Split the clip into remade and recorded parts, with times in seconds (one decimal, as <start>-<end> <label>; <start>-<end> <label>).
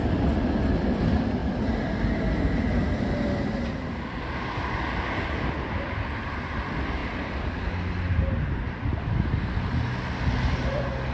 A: 0.0-1.4 remade; 1.4-6.3 recorded; 6.3-7.0 remade; 7.0-10.7 recorded; 10.7-11.1 remade